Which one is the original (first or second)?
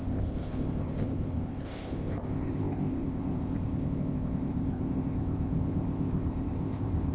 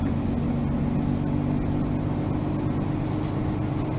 second